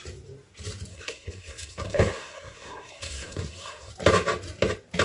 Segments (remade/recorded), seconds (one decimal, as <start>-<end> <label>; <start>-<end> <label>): 0.0-0.9 recorded; 0.9-3.9 remade; 3.9-5.0 recorded